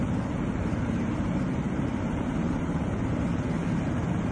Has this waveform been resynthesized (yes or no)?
yes